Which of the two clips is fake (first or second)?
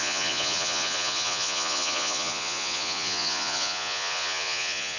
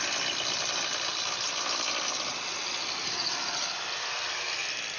first